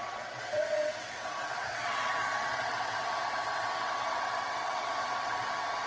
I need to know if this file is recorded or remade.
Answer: remade